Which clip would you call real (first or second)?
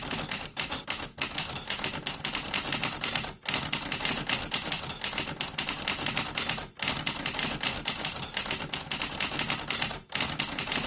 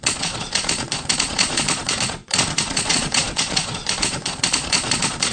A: first